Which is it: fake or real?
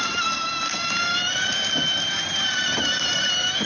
real